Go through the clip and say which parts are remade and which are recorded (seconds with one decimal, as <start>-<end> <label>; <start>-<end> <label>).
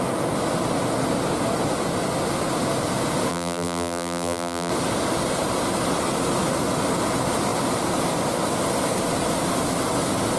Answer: 0.0-3.3 recorded; 3.3-4.7 remade; 4.7-10.4 recorded